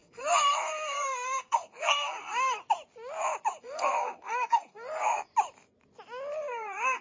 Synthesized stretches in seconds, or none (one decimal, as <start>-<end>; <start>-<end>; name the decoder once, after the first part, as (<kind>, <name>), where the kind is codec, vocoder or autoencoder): 0.0-2.6 (codec, SNAC); 3.6-5.3; 6.5-7.0